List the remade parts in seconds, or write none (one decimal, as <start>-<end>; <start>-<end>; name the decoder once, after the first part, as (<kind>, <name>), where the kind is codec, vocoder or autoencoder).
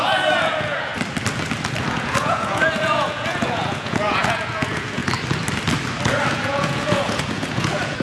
0.0-0.9 (vocoder, Vocos); 1.8-5.0; 6.3-8.0